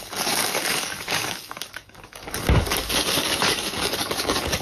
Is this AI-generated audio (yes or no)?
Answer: yes